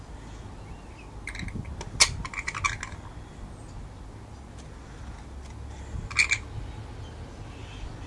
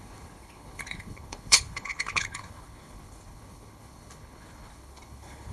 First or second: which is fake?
second